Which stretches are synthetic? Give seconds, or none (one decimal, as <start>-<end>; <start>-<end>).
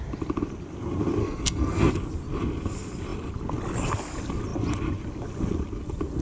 1.2-1.9